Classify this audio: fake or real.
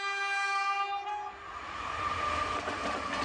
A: real